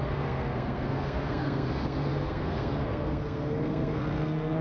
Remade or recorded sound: remade